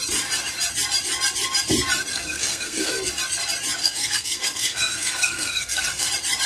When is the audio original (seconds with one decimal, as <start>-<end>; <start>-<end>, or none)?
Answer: 0.0-2.1; 3.1-3.8; 6.1-6.5